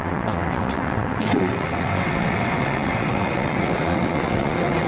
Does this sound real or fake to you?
fake